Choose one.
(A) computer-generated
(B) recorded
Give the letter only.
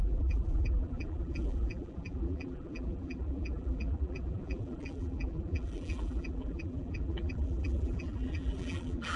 A